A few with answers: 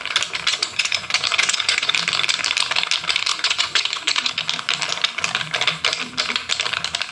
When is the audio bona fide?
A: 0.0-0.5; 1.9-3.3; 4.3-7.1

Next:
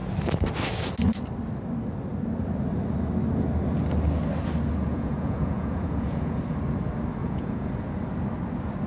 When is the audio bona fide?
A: 0.0-4.9; 6.4-7.2; 7.7-8.9

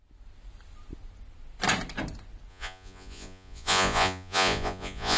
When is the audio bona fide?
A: 0.0-2.5

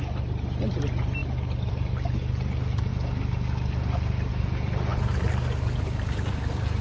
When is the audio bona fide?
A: 0.0-6.8

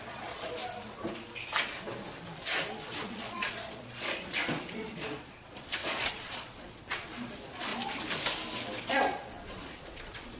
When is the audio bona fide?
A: 0.6-3.0; 7.7-8.9

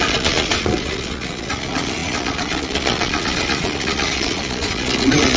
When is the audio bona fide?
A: none

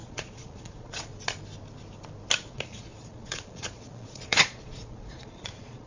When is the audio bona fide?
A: 1.1-2.5

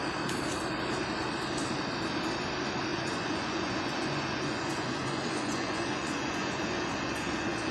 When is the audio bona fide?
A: 0.0-2.9